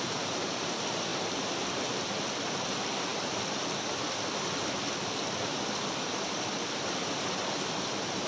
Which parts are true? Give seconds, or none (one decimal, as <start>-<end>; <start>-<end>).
1.1-2.5